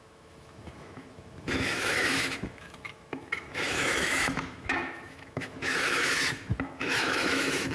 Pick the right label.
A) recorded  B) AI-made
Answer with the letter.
B